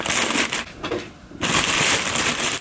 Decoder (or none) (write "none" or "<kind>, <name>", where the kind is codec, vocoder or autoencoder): none